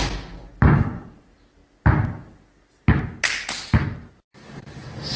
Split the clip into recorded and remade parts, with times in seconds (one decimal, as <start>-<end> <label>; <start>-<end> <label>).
0.0-5.2 recorded